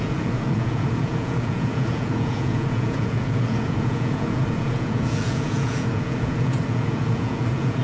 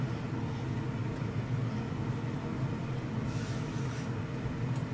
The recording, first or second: second